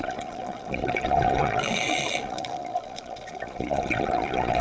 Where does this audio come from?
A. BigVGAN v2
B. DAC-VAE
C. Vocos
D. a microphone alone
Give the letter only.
C